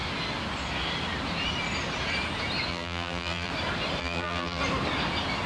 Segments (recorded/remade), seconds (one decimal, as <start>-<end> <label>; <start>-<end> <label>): 0.0-2.7 recorded; 2.7-3.5 remade; 3.5-4.0 recorded; 4.0-4.6 remade; 4.6-5.5 recorded